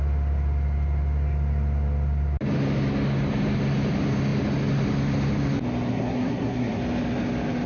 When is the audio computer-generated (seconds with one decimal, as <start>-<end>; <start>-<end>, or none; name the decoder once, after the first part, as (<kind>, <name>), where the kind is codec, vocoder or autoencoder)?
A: 5.9-6.8 (codec, SNAC)